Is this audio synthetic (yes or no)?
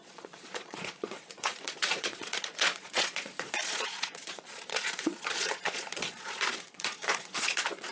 yes